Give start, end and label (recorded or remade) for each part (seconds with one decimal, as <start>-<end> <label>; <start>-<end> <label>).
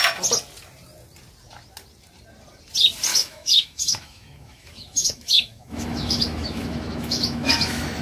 0.0-3.1 recorded; 3.1-8.0 remade